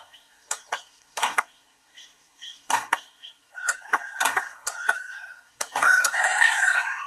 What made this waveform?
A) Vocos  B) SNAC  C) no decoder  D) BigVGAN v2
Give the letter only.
B